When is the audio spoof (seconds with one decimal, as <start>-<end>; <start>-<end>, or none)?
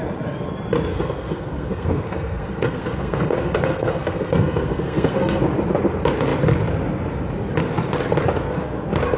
0.9-5.4